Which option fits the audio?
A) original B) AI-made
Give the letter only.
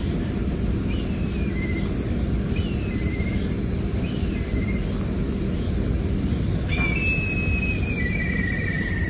A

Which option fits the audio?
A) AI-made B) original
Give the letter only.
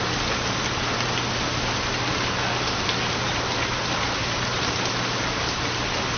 B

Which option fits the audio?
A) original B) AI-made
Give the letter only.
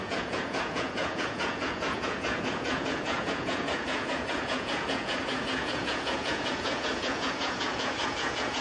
B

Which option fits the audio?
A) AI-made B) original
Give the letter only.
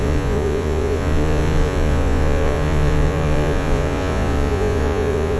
A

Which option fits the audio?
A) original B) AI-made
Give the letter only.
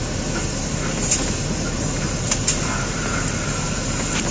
A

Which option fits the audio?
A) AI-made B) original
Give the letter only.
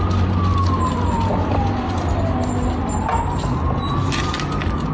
B